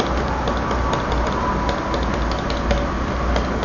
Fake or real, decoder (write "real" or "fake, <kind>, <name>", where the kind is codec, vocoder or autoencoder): real